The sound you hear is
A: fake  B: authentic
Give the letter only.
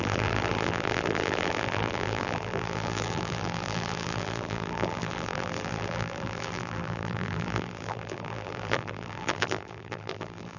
A